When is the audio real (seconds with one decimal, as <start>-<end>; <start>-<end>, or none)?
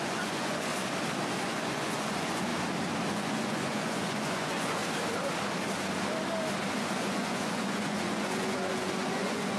0.7-1.4; 2.5-3.1; 4.8-6.8